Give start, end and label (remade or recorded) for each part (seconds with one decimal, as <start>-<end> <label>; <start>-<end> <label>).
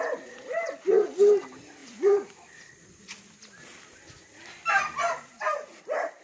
0.0-6.2 recorded